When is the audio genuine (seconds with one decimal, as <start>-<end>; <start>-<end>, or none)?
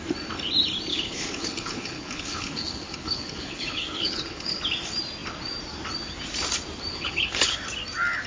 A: 0.0-0.9; 4.6-6.9; 7.6-8.3